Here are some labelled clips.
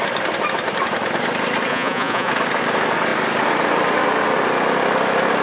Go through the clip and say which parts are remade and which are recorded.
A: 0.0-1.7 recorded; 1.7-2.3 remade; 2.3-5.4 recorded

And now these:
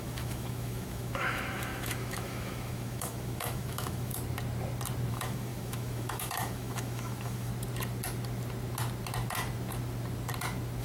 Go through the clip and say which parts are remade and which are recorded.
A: 0.0-4.1 remade; 4.1-5.1 recorded; 5.1-7.5 remade; 7.5-10.8 recorded